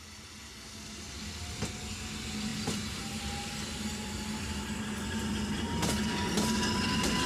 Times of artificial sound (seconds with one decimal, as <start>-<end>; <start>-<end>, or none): 2.5-3.1

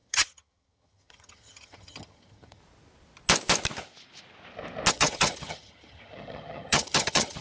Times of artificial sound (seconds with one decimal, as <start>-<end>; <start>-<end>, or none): 0.0-2.6; 4.9-7.4

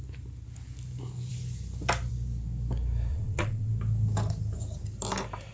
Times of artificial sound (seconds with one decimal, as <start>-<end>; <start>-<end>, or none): 3.1-3.7

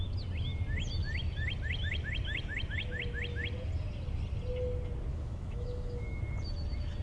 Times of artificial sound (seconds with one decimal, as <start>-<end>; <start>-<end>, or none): 5.1-6.2

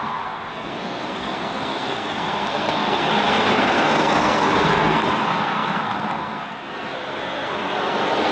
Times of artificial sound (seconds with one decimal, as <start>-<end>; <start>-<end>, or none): 0.0-8.3

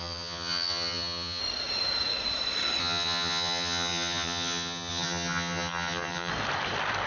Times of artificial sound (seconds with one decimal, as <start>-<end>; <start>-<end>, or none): 0.0-1.4; 2.8-6.3